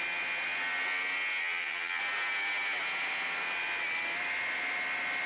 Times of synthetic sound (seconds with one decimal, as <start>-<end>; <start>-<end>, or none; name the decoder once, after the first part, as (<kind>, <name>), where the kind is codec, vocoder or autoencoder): 1.4-2.0 (vocoder, HiFi-GAN)

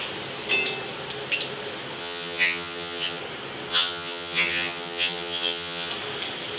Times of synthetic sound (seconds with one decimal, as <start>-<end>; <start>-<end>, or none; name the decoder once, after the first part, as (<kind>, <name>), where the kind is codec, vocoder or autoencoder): 2.0-3.2 (vocoder, HiFi-GAN); 3.7-5.9